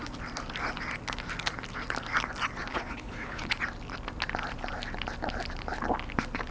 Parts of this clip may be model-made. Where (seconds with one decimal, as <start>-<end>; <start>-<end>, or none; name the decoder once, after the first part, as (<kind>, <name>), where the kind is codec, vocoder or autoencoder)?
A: 2.7-3.5 (codec, HILCodec)